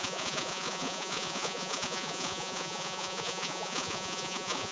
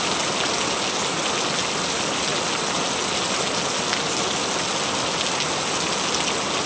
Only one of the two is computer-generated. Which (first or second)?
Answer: first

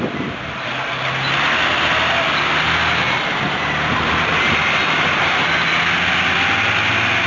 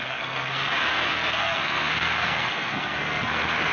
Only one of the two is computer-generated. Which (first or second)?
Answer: second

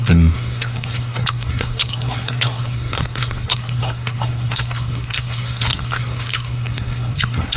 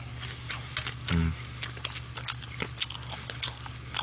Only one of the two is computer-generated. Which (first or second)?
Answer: first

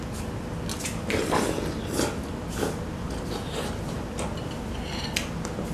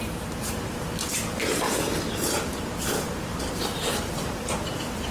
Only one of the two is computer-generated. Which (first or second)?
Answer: second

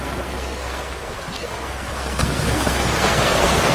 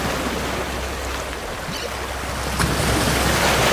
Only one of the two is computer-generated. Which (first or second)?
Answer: first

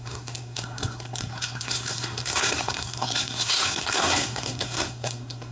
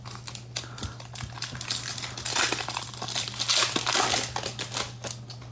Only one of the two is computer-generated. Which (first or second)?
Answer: first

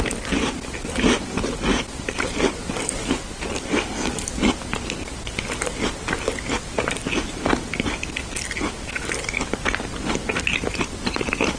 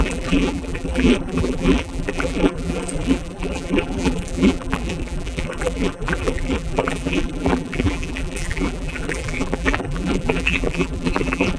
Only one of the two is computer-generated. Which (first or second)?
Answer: second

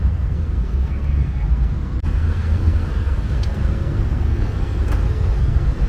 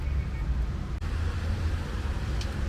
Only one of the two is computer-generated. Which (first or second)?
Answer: first